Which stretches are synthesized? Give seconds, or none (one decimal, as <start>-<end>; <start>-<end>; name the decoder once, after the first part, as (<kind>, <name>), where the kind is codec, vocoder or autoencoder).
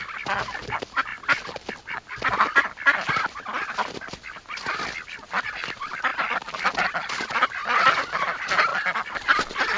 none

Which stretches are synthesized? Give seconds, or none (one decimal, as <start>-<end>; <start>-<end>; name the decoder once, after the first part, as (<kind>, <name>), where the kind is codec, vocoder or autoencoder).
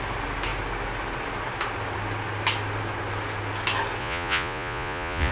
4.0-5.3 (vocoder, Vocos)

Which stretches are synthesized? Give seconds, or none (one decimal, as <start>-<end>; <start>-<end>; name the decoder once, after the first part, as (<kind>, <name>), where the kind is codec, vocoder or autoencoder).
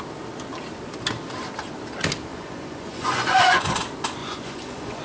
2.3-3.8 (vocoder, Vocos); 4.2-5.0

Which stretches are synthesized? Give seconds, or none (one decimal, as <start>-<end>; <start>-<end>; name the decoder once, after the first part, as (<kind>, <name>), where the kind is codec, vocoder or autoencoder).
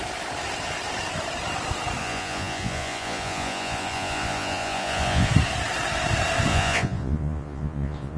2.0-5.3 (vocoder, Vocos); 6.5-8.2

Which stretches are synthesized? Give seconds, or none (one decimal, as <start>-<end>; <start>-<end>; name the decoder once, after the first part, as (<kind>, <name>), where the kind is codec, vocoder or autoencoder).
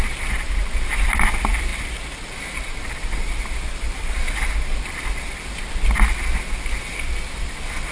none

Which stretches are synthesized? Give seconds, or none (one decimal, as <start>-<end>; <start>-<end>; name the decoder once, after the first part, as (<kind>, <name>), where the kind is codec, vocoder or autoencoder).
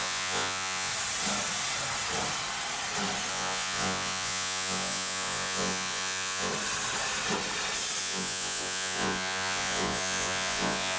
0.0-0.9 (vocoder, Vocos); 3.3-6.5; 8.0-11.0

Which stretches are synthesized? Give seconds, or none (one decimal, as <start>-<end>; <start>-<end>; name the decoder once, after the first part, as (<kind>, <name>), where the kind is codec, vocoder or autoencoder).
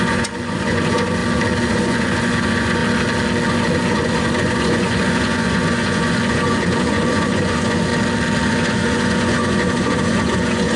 0.0-1.2 (vocoder, Vocos); 1.7-2.8; 3.5-7.9; 8.5-10.8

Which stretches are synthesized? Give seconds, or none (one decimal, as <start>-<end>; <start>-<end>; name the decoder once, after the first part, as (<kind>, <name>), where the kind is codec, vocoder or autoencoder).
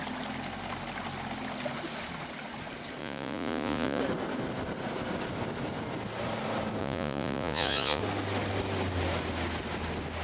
3.0-4.0 (vocoder, Vocos); 6.8-8.0